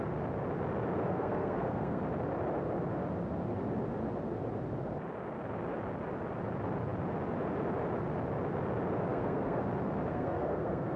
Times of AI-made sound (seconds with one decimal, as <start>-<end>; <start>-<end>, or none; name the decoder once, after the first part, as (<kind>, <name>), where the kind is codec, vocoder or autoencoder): 1.1-2.0 (codec, SNAC); 9.1-9.6; 10.1-11.0